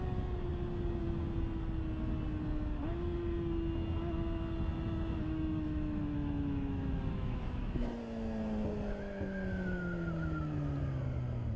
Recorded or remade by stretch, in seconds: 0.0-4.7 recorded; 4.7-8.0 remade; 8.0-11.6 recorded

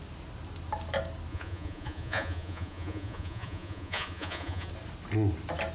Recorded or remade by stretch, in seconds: 0.0-1.3 recorded; 1.3-4.7 remade; 4.7-5.7 recorded

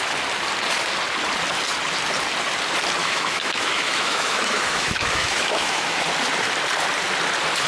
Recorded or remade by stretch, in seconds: 0.0-3.0 recorded; 3.0-6.0 remade; 6.0-7.7 recorded

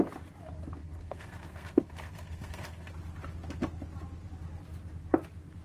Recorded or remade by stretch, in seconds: 0.0-0.8 recorded; 0.8-2.9 remade; 2.9-5.6 recorded

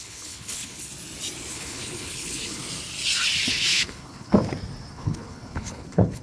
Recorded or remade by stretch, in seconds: 0.0-0.9 remade; 0.9-1.5 recorded; 1.5-2.6 remade; 2.6-3.5 recorded; 3.5-4.3 remade; 4.3-4.9 recorded; 4.9-6.2 remade